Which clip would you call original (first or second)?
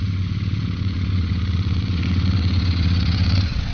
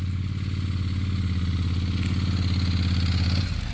second